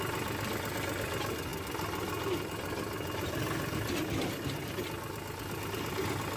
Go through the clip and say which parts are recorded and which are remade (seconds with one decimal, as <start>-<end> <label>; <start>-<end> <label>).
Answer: 0.0-6.4 recorded